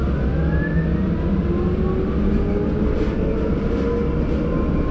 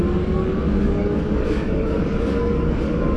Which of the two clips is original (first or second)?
first